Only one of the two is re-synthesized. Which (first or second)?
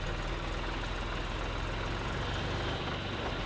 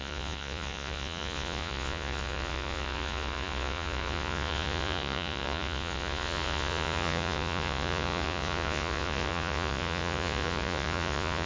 second